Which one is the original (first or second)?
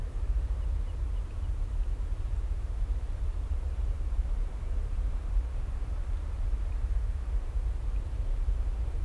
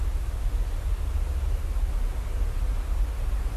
second